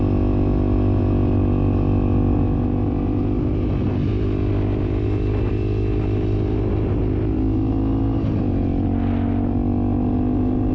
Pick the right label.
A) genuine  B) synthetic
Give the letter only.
A